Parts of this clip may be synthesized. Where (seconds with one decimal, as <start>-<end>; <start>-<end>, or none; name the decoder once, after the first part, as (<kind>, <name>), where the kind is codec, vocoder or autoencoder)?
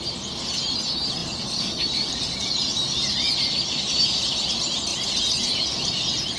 1.2-3.3 (vocoder, BigVGAN v2)